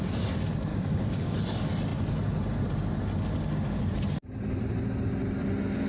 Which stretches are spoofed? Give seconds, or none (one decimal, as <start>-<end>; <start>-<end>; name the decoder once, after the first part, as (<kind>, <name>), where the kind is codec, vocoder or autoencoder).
0.7-1.4 (codec, DAC)